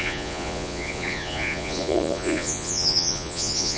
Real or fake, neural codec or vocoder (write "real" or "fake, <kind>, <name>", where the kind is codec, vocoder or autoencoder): fake, vocoder, Vocos